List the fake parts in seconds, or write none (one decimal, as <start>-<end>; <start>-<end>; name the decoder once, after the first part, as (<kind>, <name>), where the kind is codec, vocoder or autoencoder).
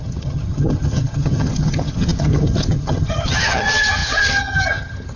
0.0-5.2 (vocoder, HiFi-GAN)